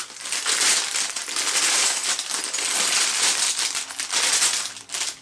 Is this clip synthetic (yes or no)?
no